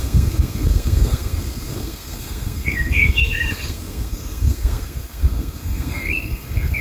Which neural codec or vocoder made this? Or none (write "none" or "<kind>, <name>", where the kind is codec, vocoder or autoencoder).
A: codec, SNAC